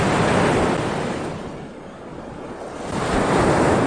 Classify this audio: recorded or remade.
recorded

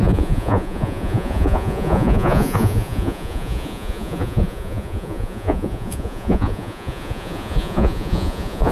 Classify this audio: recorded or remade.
remade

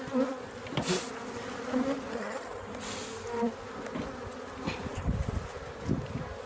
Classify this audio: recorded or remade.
recorded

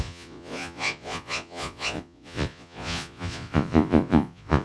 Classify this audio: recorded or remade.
remade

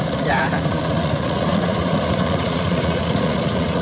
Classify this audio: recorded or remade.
remade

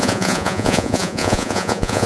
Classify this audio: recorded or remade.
remade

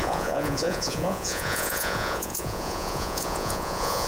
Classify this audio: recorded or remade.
remade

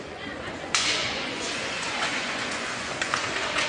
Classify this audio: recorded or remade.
remade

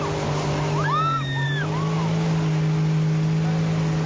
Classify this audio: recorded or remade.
recorded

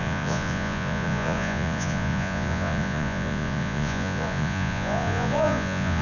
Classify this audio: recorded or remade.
remade